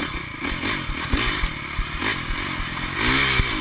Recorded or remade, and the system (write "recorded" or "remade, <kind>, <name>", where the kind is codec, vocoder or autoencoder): recorded